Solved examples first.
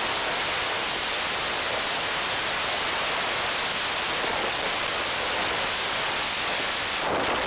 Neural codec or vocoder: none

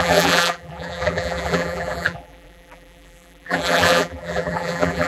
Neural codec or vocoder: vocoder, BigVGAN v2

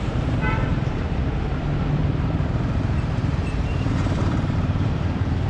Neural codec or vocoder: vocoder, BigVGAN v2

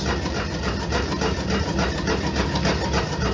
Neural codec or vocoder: none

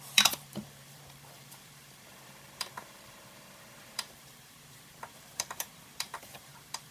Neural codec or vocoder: vocoder, BigVGAN v2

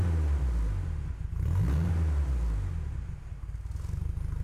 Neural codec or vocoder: none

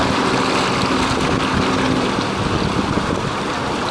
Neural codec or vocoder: none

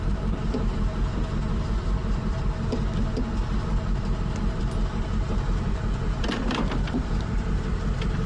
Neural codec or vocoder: vocoder, BigVGAN v2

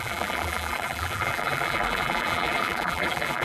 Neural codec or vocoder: vocoder, BigVGAN v2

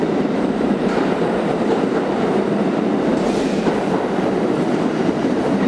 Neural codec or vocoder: vocoder, BigVGAN v2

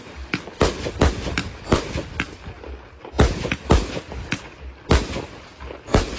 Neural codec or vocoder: none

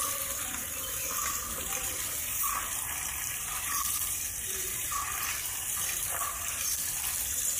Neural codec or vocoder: vocoder, BigVGAN v2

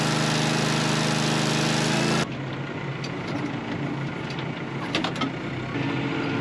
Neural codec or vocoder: none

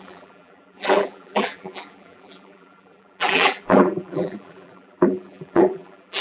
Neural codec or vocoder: vocoder, BigVGAN v2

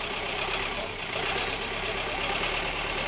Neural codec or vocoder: vocoder, BigVGAN v2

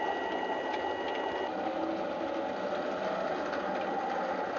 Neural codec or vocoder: none